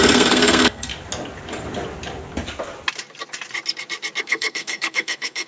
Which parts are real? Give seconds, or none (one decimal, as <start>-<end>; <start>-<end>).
0.9-4.2